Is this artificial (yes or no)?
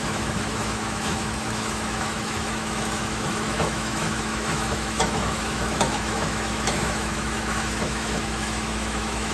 yes